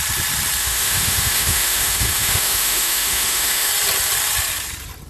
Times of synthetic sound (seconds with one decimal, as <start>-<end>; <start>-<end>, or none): 0.6-3.7